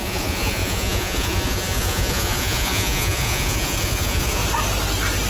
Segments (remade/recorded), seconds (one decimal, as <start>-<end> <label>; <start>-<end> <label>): 0.0-4.4 remade; 4.4-5.3 recorded